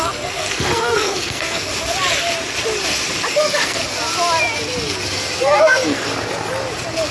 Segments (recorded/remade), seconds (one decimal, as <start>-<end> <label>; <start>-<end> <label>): 0.0-1.7 remade; 1.7-3.3 recorded; 3.3-3.8 remade; 3.8-5.4 recorded; 5.4-6.1 remade; 6.1-7.1 recorded